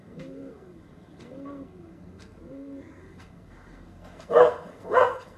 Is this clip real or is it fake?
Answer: fake